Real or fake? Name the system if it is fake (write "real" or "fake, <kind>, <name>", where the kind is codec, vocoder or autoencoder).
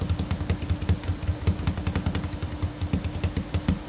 real